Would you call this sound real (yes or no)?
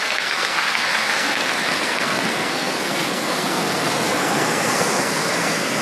no